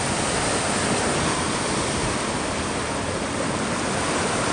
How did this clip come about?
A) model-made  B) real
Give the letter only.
B